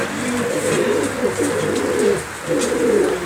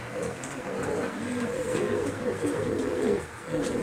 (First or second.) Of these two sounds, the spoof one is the second